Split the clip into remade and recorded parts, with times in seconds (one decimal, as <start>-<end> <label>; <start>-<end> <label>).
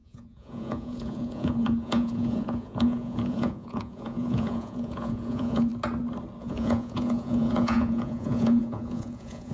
0.0-5.7 remade; 5.7-6.4 recorded; 6.4-9.5 remade